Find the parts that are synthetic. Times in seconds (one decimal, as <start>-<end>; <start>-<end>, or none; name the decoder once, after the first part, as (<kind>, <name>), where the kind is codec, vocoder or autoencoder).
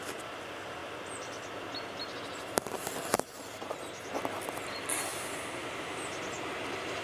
none